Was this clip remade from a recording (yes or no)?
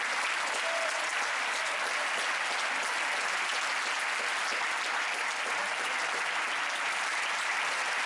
no